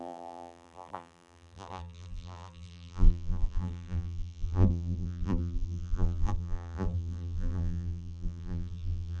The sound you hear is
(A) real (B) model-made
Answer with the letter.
B